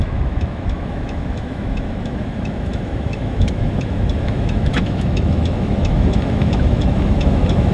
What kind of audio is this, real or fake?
fake